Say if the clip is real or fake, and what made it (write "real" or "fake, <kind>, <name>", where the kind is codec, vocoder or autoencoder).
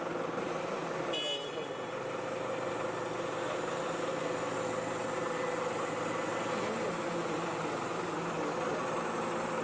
real